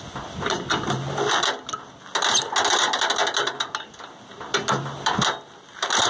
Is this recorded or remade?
recorded